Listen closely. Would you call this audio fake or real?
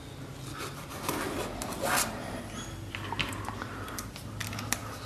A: real